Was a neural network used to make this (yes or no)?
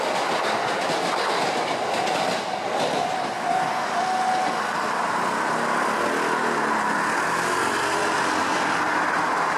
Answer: no